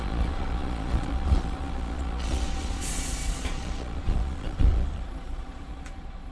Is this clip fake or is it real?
fake